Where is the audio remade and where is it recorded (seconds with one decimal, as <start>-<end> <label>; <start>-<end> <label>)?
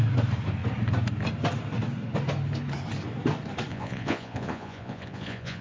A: 0.0-3.7 recorded; 3.7-5.6 remade